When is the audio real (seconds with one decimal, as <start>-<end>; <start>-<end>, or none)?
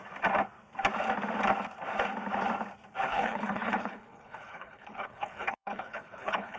0.0-3.1